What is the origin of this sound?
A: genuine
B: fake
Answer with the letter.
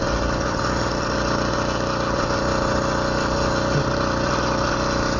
A